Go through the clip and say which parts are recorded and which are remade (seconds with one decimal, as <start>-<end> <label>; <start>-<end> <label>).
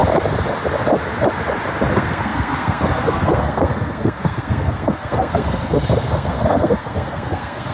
0.0-1.9 recorded; 1.9-7.7 remade